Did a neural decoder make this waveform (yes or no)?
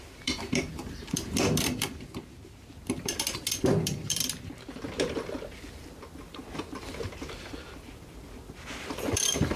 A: yes